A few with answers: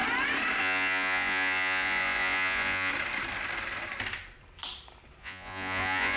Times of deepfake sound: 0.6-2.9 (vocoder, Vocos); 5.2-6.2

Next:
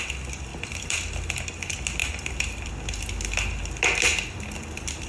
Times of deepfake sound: 0.5-1.3 (vocoder, BigVGAN v2); 2.0-2.7

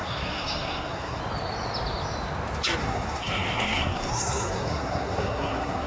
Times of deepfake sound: 0.0-1.2 (codec, SNAC); 2.8-5.9

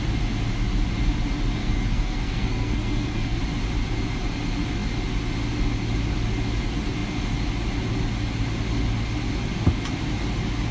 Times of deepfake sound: 1.6-3.4 (codec, SNAC)

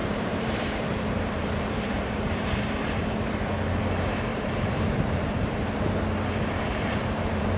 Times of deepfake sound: 0.0-2.6 (vocoder, BigVGAN v2); 4.3-5.5; 6.7-7.6

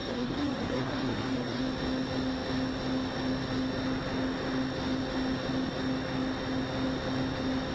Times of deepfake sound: 0.0-1.6 (codec, SNAC)

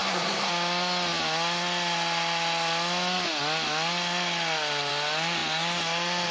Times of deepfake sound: 0.0-0.5 (codec, SNAC)

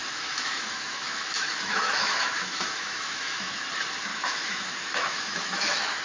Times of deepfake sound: 0.0-3.6 (autoencoder, DAC-VAE); 4.1-6.0